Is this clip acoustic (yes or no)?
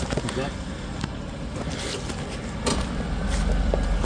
yes